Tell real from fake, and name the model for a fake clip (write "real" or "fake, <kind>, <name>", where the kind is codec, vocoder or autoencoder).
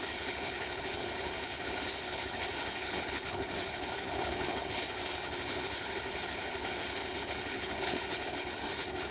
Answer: fake, codec, HILCodec